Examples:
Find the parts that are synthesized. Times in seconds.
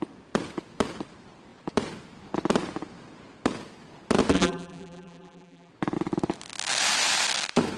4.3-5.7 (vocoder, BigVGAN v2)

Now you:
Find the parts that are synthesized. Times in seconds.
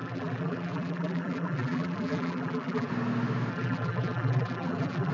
0.0-2.9 (vocoder, BigVGAN v2); 3.5-5.1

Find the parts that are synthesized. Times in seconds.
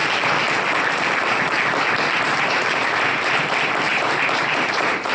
2.8-3.5 (vocoder, BigVGAN v2); 3.9-5.1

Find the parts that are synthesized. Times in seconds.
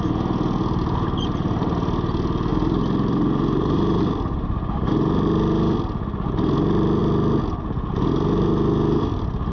2.5-4.9 (vocoder, BigVGAN v2)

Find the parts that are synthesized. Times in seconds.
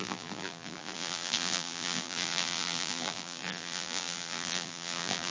0.0-5.3 (vocoder, BigVGAN v2)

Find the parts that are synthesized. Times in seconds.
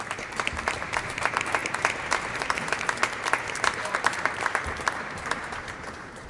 0.0-6.3 (vocoder, BigVGAN v2)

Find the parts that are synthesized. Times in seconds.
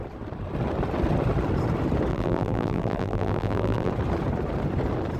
2.1-3.9 (vocoder, BigVGAN v2)